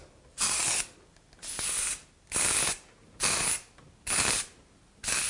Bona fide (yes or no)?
yes